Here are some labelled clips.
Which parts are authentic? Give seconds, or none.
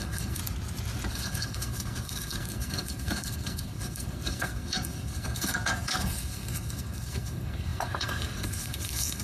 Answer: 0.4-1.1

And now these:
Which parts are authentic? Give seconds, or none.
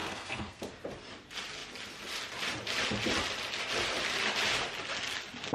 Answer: 0.6-5.5